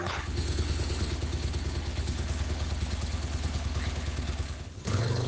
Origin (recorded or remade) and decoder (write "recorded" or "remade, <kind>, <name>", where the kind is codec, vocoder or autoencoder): remade, codec, HILCodec